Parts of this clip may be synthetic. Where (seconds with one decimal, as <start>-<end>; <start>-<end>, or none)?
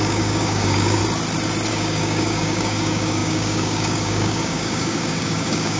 0.0-1.0; 1.7-5.8